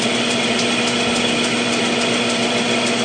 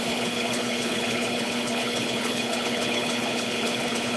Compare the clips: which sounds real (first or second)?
first